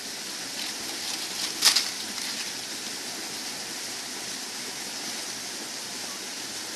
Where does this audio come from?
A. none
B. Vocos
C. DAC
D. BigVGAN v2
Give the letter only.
A